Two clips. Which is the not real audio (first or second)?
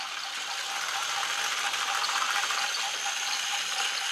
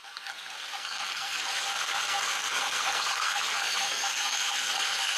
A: second